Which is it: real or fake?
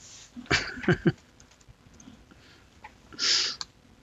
real